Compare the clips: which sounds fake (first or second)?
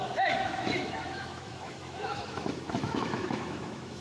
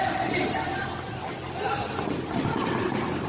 first